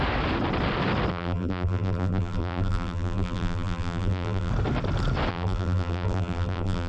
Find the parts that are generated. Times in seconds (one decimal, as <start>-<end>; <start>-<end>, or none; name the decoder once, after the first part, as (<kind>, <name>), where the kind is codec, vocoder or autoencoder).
1.1-4.5 (vocoder, BigVGAN v2); 5.3-6.9